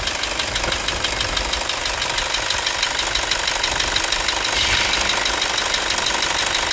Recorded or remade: recorded